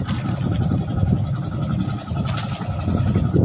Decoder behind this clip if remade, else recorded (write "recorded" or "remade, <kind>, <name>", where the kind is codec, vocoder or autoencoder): recorded